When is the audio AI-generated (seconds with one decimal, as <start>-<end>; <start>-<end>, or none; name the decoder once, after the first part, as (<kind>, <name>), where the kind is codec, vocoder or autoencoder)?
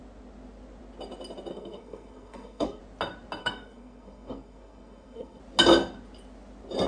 1.5-2.8 (codec, SNAC); 3.4-5.4